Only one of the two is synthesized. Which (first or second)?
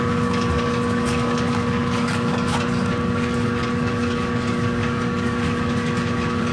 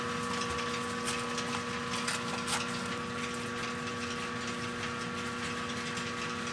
first